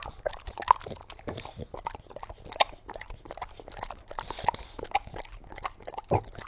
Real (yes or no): yes